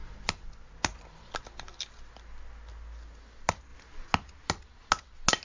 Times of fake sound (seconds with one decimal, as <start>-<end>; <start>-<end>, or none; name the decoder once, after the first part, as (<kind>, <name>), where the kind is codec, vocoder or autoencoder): none